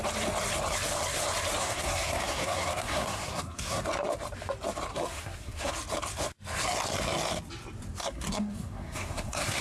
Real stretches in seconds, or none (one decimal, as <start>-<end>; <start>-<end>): 0.0-1.6; 3.8-4.9; 5.7-8.0